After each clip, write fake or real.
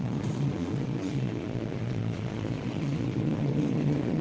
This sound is fake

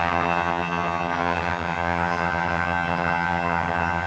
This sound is fake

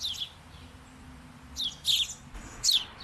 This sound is real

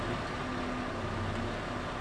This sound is real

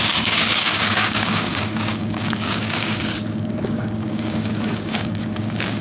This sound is fake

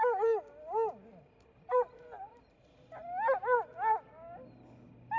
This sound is real